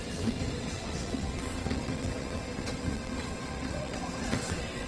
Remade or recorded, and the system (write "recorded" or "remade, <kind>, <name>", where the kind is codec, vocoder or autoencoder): remade, vocoder, WaveNeXt